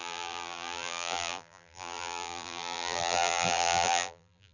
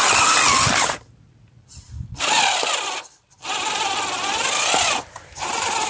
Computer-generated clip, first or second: first